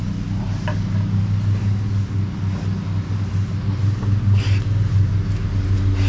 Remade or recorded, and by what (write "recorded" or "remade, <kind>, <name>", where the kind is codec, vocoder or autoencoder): recorded